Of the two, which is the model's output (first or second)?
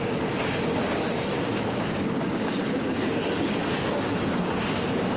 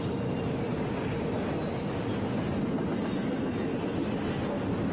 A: first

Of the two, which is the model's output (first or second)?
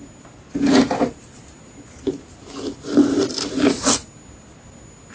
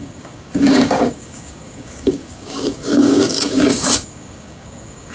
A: second